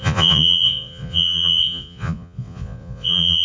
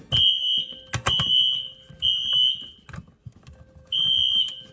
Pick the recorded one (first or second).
second